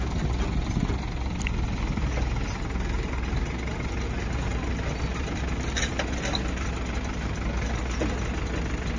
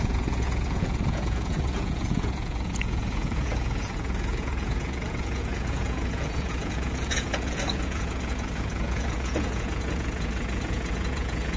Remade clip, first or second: second